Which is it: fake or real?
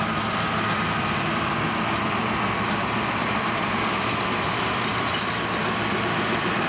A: fake